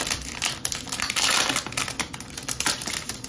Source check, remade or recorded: remade